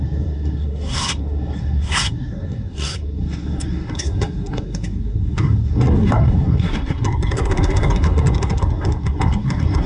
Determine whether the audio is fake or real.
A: fake